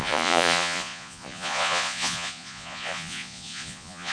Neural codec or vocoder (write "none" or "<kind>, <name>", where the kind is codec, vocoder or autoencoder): vocoder, Vocos